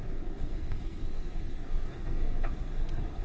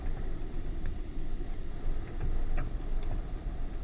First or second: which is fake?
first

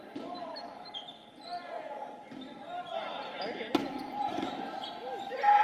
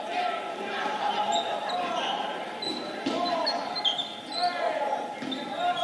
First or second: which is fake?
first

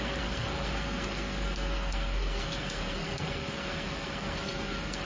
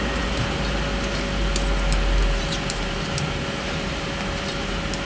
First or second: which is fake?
first